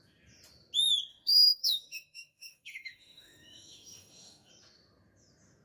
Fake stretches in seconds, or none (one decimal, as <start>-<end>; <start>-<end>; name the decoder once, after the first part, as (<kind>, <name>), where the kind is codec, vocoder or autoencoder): 1.1-4.5 (autoencoder, DAC-VAE)